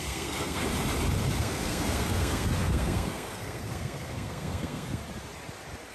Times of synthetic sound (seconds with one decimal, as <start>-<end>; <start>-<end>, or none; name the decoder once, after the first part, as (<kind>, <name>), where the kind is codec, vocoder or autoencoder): 0.0-0.6 (codec, SNAC); 1.4-5.0